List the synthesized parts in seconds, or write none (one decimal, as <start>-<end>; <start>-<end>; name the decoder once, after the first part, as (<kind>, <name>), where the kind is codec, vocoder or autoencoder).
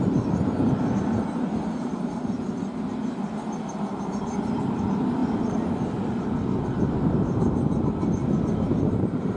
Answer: none